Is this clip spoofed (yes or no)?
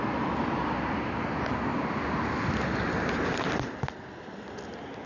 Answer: no